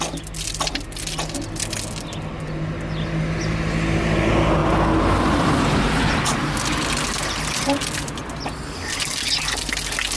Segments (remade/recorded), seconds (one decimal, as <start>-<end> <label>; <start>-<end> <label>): 0.0-10.2 recorded